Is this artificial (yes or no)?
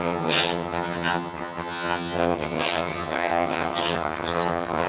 yes